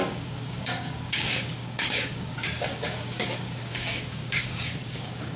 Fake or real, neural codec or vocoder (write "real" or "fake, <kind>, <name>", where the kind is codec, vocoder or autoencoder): fake, codec, DAC